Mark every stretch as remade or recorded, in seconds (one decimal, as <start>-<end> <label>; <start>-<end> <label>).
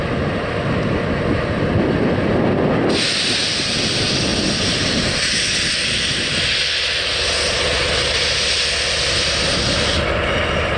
0.0-10.8 recorded